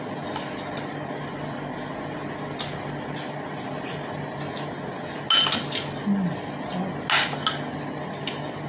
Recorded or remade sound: recorded